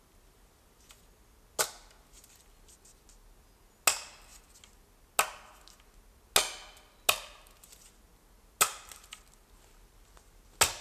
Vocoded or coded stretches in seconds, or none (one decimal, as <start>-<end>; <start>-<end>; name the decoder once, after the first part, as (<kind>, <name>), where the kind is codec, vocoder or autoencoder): none

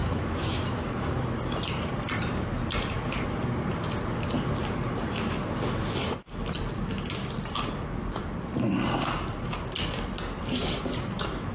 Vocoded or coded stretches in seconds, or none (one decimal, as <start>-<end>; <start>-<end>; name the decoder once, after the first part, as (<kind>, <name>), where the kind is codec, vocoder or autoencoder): 0.0-1.1 (autoencoder, DAC-VAE)

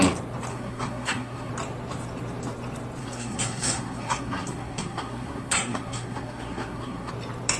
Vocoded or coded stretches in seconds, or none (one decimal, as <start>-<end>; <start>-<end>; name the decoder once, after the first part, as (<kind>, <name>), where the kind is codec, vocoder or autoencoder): 0.5-1.5 (codec, SNAC); 3.0-7.1

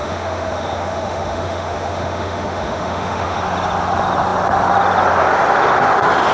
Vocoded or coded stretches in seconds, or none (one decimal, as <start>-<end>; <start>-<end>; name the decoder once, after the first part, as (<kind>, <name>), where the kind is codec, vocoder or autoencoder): 0.0-3.4 (autoencoder, DAC-VAE)

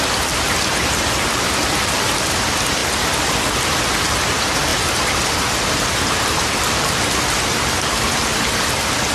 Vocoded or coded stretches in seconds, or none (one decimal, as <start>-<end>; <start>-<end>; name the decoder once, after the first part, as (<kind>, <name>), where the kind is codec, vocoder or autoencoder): none